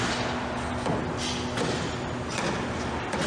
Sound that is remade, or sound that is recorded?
recorded